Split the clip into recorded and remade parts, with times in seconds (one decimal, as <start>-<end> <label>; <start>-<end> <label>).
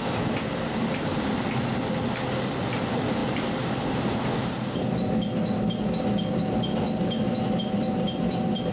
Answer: 0.0-8.7 recorded